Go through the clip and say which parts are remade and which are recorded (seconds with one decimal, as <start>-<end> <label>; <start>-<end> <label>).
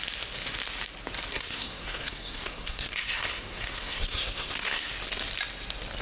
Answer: 0.0-1.3 recorded; 1.3-4.9 remade; 4.9-6.0 recorded